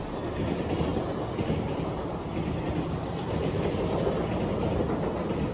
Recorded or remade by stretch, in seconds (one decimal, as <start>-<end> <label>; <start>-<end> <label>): 0.0-0.9 recorded; 0.9-3.6 remade; 3.6-5.5 recorded